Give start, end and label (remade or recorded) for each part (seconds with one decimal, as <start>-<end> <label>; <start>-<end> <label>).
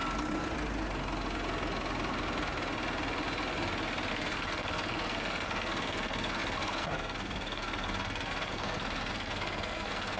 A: 0.0-4.1 recorded; 4.1-10.2 remade